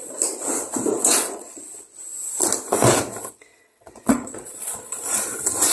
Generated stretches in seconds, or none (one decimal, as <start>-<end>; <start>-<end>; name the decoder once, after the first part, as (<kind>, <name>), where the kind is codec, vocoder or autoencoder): 0.9-1.6 (vocoder, Vocos); 3.5-5.2